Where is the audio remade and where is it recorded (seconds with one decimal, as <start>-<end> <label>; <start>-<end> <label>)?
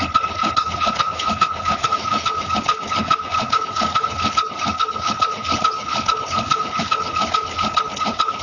0.0-8.4 remade